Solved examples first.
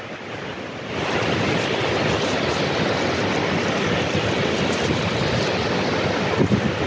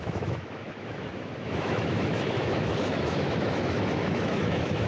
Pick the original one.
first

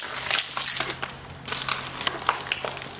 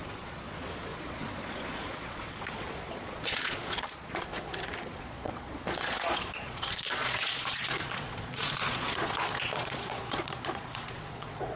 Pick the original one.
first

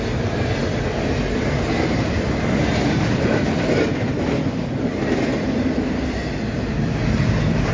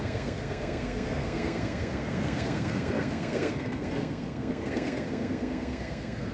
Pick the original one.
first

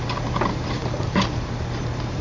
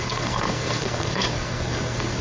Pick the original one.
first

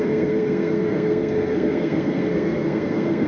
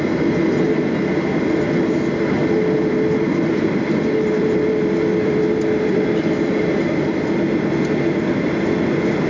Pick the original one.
second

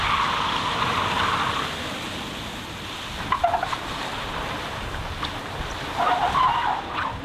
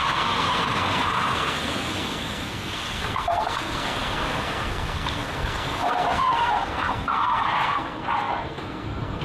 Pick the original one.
first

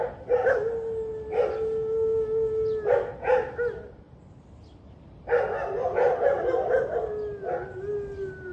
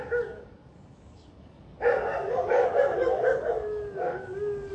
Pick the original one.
first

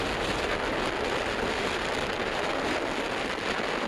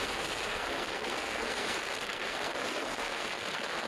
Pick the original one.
first